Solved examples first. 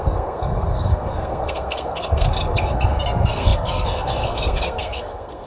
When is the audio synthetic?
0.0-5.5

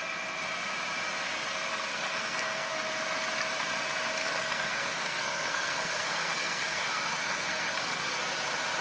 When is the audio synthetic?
1.7-2.7; 4.2-8.2

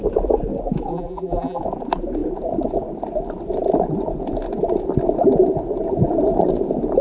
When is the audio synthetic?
0.9-1.6